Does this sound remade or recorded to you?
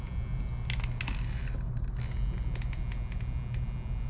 recorded